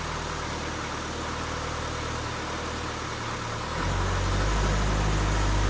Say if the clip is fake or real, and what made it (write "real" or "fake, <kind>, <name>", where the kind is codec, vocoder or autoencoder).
real